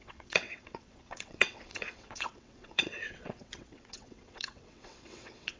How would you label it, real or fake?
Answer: fake